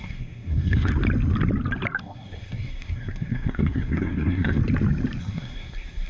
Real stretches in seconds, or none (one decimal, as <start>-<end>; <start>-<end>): 0.9-2.0; 4.6-5.2